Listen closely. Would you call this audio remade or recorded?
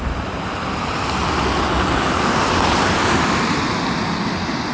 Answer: remade